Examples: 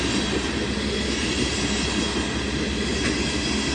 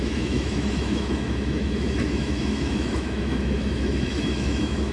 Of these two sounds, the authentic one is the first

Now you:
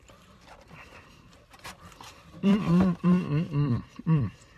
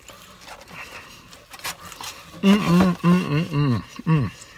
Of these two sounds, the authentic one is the second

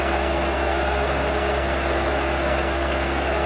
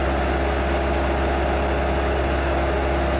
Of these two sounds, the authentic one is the second